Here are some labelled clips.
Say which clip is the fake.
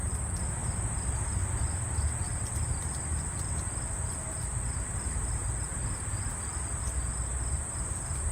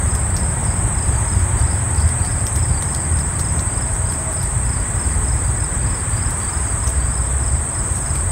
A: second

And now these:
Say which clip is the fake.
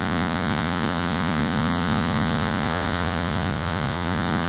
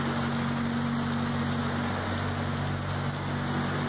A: first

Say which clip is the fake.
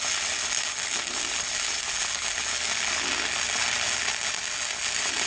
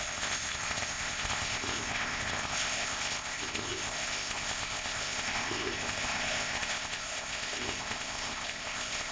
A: second